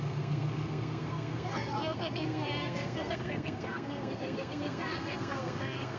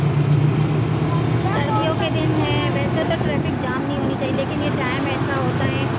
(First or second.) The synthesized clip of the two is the first